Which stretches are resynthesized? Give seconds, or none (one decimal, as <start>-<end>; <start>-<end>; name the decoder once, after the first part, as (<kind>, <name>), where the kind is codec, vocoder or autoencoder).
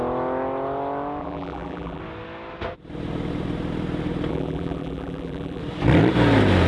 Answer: 1.2-2.0 (vocoder, BigVGAN v2); 4.3-5.6